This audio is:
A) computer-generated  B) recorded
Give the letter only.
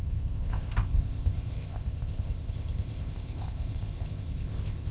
A